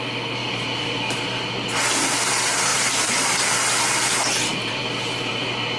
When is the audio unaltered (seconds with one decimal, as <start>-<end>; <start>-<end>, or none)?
0.0-0.4; 1.0-2.7; 3.5-4.5; 5.3-5.8